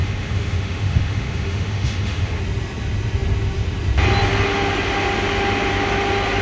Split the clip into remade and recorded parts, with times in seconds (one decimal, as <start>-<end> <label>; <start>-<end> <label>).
0.0-2.4 remade; 2.4-6.4 recorded